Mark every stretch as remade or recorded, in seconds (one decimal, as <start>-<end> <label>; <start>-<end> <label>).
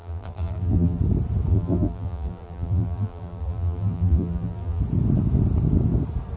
0.0-1.0 remade; 1.0-1.5 recorded; 1.5-4.8 remade; 4.8-6.4 recorded